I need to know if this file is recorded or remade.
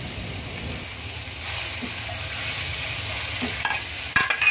recorded